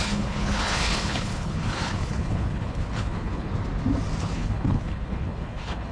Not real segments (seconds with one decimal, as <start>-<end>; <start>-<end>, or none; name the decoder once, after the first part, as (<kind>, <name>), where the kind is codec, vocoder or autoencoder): 0.0-3.5 (codec, HILCodec); 4.2-5.9